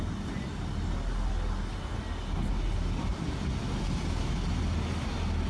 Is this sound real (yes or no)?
yes